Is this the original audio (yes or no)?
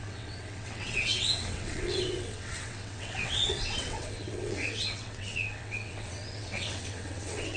no